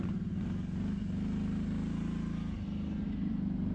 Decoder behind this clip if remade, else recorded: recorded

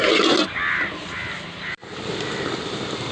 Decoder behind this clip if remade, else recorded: recorded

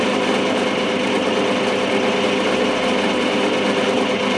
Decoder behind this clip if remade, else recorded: recorded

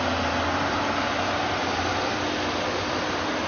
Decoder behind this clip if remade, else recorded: recorded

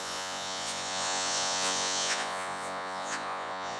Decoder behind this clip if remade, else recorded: remade, vocoder, Vocos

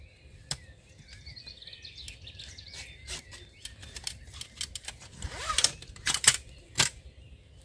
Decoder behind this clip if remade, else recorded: recorded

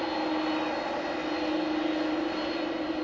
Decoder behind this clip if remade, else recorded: recorded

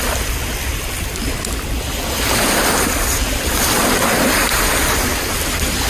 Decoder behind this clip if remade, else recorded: recorded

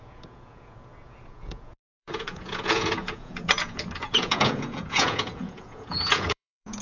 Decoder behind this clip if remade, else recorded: remade, vocoder, Vocos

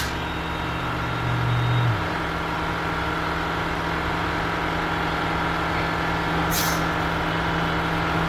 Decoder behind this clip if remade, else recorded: recorded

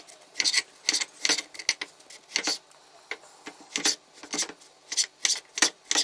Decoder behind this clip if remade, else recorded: recorded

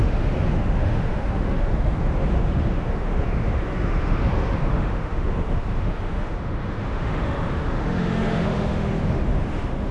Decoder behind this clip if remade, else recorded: remade, autoencoder, DAC-VAE